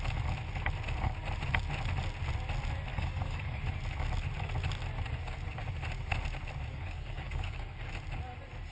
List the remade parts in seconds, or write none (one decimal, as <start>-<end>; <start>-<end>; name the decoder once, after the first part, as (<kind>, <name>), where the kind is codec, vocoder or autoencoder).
2.9-3.6 (codec, DAC); 6.7-7.9

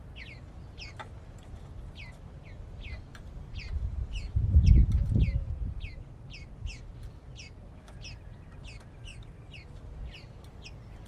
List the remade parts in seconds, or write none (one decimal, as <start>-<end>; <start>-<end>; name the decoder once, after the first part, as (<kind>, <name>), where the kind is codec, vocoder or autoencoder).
3.1-5.2 (vocoder, BigVGAN v2)

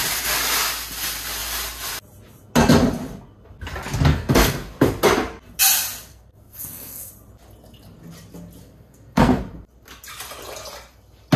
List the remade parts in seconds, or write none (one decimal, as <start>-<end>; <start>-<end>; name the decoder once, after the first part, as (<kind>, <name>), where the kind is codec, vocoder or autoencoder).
4.1-4.7 (codec, SNAC); 6.1-7.1; 8.6-9.4

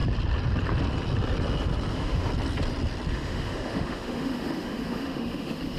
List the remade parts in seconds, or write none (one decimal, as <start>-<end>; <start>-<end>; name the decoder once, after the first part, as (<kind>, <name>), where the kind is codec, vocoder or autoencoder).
1.9-2.3 (autoencoder, DAC-VAE); 3.1-5.8